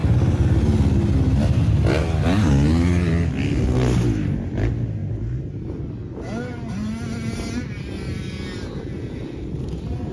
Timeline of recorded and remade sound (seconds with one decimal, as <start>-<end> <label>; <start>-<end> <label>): 0.0-10.1 recorded

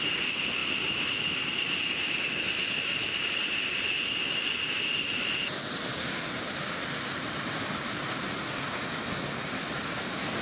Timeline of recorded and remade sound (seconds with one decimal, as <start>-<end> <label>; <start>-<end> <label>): 0.0-0.6 recorded; 0.6-1.2 remade; 1.2-10.4 recorded

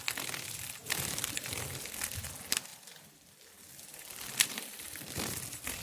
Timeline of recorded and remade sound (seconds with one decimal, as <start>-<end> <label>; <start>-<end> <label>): 0.0-2.7 recorded; 2.7-5.8 remade

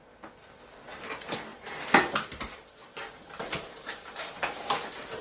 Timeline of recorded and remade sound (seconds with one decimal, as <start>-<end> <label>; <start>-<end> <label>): 0.0-1.5 recorded; 1.5-4.6 remade; 4.6-5.2 recorded

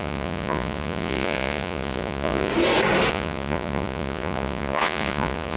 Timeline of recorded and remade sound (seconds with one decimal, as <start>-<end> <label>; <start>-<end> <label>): 0.0-2.5 remade; 2.5-3.1 recorded; 3.1-5.6 remade